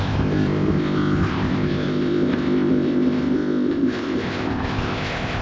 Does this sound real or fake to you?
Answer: fake